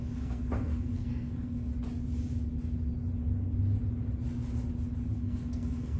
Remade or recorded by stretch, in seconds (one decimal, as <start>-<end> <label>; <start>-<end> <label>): 0.0-1.7 remade; 1.7-5.0 recorded; 5.0-6.0 remade